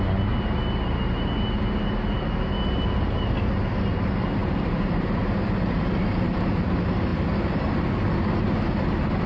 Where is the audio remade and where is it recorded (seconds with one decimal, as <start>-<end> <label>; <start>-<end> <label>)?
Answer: 0.0-9.3 recorded